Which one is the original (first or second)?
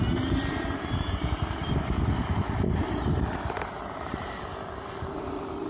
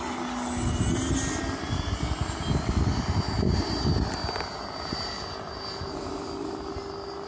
second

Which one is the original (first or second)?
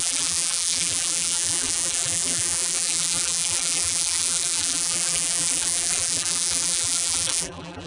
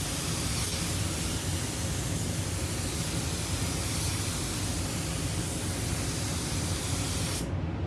second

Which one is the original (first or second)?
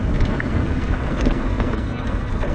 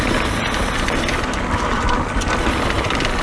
second